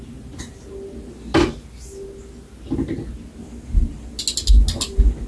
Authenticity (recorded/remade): recorded